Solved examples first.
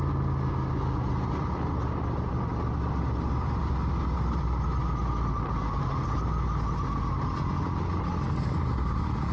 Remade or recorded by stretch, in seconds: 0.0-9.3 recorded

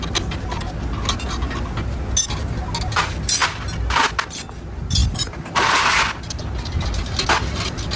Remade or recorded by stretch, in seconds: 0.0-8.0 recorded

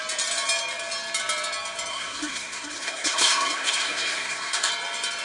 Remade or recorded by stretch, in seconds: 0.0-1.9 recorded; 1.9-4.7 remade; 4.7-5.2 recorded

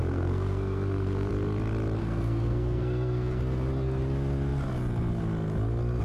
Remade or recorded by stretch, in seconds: 0.0-1.3 remade; 1.3-2.0 recorded; 2.0-3.4 remade; 3.4-6.0 recorded